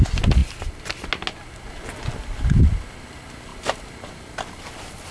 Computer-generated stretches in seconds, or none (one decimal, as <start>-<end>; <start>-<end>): none